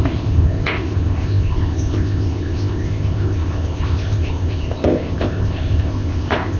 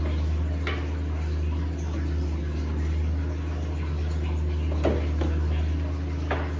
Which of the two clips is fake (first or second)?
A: first